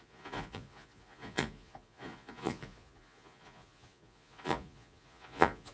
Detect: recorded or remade remade